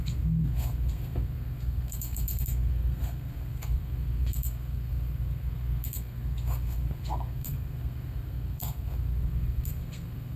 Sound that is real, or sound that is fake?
fake